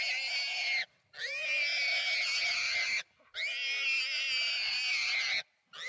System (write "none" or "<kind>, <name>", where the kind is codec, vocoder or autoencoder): none